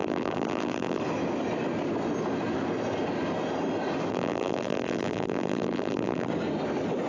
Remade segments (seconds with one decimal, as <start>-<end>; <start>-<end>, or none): 0.0-1.0; 4.1-6.3